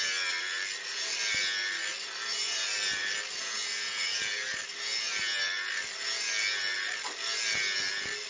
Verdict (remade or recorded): recorded